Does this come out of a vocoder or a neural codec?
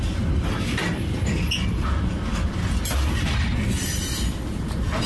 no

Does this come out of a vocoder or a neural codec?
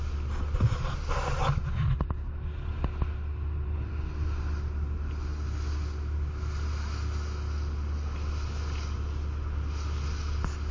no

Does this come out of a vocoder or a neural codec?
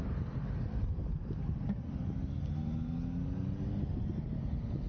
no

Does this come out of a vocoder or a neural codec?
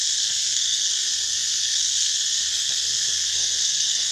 yes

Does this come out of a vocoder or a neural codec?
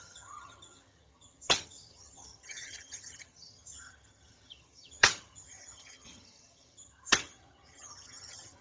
yes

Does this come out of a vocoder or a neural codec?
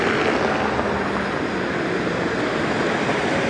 no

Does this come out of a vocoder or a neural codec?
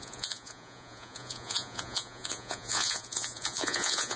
yes